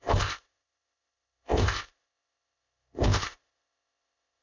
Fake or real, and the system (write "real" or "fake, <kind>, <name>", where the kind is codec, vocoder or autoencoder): fake, codec, ZipCodec